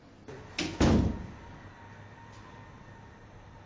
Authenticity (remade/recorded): recorded